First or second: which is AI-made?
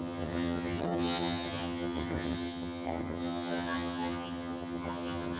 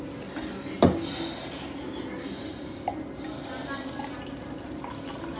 first